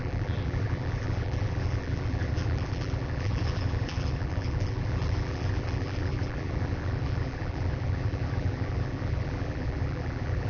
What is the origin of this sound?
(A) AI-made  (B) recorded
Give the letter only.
A